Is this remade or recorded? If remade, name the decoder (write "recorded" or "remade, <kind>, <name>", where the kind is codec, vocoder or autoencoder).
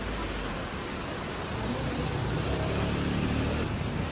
recorded